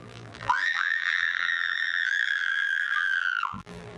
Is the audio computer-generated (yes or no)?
yes